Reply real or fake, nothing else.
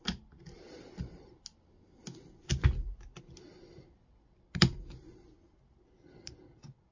real